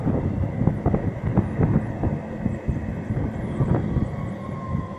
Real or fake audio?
real